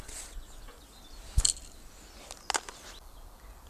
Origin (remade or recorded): recorded